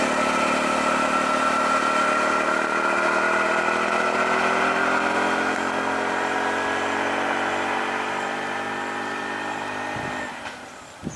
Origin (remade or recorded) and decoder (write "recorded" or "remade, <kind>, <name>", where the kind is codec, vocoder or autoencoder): recorded